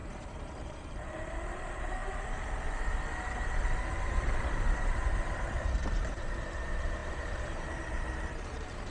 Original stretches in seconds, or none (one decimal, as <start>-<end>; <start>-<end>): 2.0-4.8